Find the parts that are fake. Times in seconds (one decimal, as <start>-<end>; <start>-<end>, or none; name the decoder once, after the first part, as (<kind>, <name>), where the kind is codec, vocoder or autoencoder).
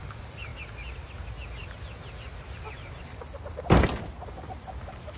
none